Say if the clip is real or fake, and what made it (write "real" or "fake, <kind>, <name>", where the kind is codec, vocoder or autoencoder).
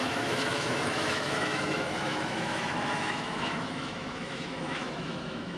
fake, autoencoder, DAC-VAE